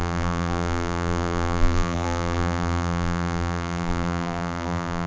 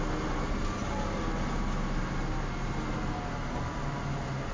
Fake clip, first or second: first